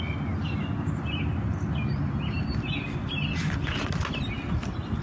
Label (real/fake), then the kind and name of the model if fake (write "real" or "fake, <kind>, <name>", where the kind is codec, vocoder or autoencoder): real